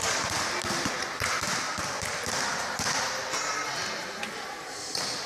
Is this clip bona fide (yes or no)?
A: yes